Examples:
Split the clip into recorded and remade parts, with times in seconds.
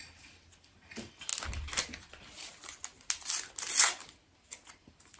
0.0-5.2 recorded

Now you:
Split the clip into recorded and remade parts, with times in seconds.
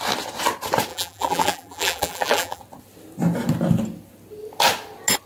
0.0-0.9 recorded; 0.9-2.6 remade; 2.6-5.3 recorded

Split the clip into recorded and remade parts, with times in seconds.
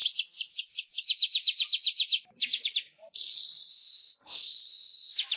0.0-0.5 recorded; 0.5-3.0 remade; 3.0-3.7 recorded; 3.7-5.4 remade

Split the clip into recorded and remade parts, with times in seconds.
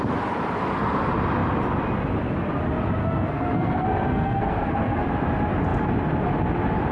0.0-3.0 recorded; 3.0-5.0 remade; 5.0-6.9 recorded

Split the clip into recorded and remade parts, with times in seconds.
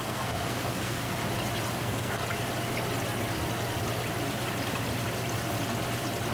0.0-1.2 remade; 1.2-1.8 recorded; 1.8-2.2 remade; 2.2-6.3 recorded